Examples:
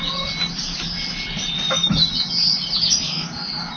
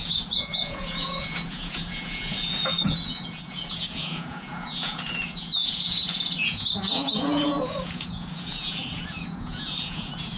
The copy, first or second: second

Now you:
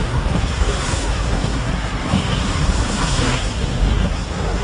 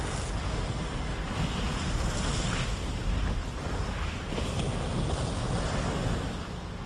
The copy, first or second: first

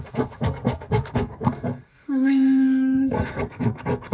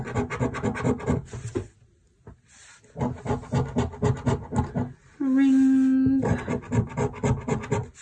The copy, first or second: first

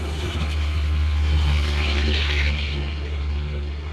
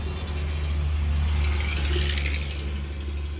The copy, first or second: first